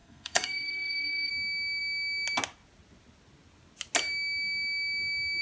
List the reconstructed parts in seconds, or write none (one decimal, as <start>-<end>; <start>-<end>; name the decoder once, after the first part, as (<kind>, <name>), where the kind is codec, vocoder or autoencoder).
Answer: 0.0-1.3 (codec, SNAC)